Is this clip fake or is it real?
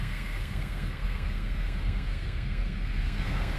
fake